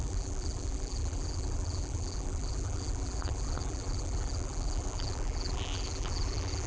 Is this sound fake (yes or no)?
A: yes